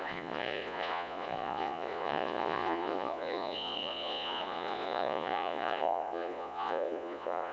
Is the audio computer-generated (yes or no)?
yes